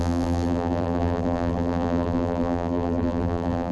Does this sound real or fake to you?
fake